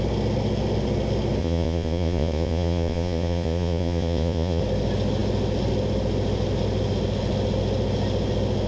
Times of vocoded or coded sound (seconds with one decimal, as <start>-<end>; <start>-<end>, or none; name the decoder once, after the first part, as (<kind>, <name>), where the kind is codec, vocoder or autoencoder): 1.4-4.6 (vocoder, Vocos)